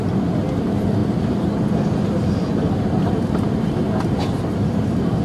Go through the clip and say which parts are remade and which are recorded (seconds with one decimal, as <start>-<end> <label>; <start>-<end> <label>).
0.0-5.2 recorded